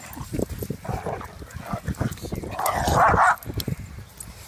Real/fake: real